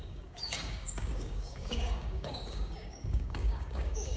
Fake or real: fake